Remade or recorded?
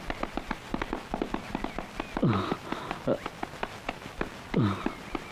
recorded